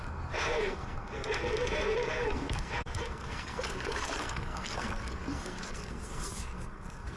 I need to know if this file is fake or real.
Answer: fake